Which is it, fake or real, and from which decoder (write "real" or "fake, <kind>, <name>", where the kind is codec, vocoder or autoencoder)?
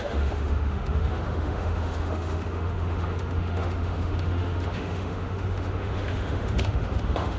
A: fake, autoencoder, DAC-VAE